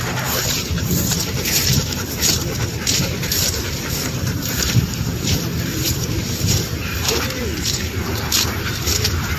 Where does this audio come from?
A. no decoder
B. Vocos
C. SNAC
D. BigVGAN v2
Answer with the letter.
D